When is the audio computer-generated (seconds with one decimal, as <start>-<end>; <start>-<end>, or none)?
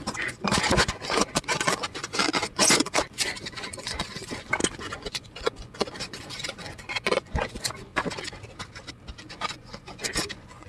0.0-7.9; 9.2-10.7